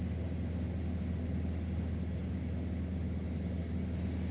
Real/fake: real